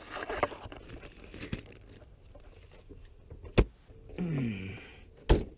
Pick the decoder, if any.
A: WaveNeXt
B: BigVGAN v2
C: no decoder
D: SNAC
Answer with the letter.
C